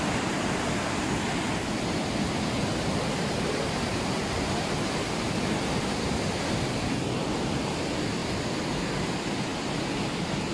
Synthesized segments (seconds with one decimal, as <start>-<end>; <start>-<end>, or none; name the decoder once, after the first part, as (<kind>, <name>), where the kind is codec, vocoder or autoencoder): none